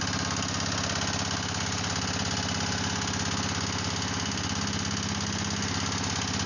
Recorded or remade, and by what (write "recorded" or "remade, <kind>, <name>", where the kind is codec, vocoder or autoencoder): recorded